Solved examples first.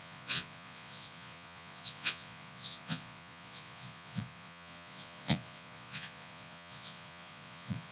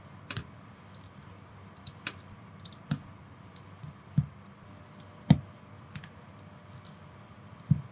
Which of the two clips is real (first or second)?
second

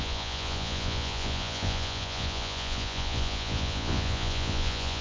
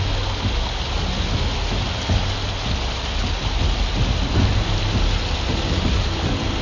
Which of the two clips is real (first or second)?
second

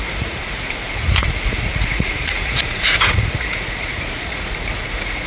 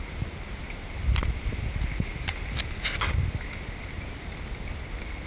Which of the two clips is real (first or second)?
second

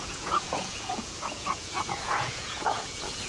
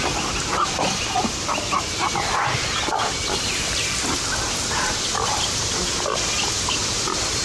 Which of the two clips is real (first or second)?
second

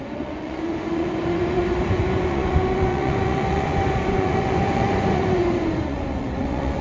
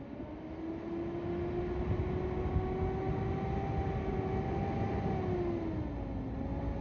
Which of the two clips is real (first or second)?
second